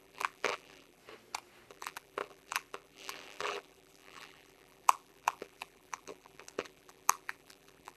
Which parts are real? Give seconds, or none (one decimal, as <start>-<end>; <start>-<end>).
1.0-1.7